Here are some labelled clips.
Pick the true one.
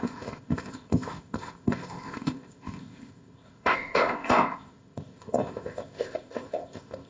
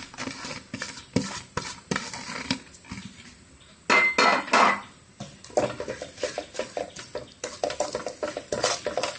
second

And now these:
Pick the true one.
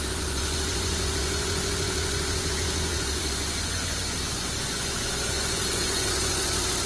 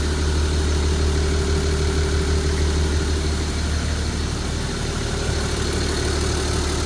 second